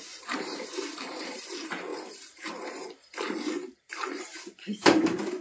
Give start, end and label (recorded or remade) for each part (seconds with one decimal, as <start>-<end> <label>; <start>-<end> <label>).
0.0-5.4 remade